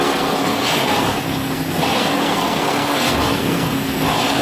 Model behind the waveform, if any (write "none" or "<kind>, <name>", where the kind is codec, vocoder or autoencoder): codec, SNAC